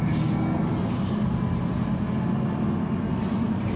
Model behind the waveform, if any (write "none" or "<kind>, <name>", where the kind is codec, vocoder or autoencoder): none